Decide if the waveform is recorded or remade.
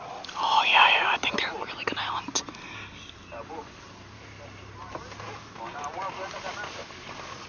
recorded